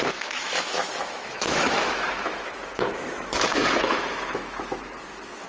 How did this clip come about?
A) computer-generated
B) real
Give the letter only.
A